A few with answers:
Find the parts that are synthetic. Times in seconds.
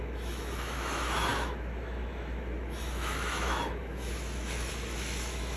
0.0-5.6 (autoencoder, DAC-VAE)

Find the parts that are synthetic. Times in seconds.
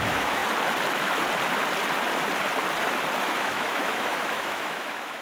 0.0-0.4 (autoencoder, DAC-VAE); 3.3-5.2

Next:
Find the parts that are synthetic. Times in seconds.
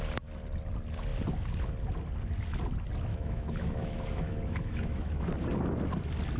3.1-5.3 (autoencoder, DAC-VAE)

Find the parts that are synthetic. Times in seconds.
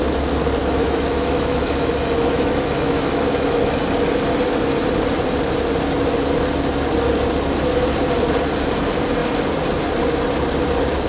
0.6-3.8 (autoencoder, DAC-VAE)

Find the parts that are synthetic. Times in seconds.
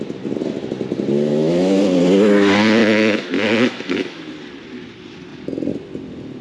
1.3-1.8 (autoencoder, DAC-VAE); 2.8-4.2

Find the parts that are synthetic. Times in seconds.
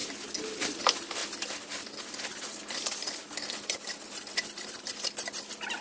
none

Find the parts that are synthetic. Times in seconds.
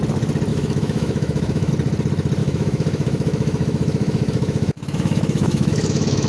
0.5-1.7 (autoencoder, DAC-VAE); 2.4-6.3